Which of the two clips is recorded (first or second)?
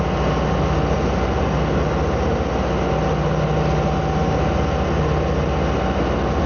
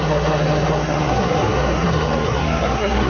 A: first